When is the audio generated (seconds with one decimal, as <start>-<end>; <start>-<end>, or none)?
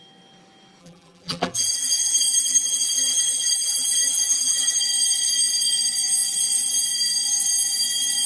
0.8-4.8